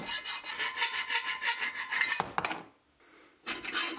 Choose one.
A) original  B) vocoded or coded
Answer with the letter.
A